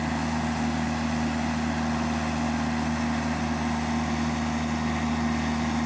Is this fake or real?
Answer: real